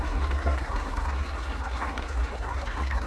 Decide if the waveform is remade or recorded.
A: remade